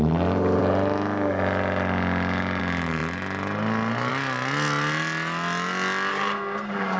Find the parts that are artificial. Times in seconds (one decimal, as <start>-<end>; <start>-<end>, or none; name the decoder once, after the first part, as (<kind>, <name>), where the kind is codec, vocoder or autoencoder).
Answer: 6.1-7.0 (codec, SNAC)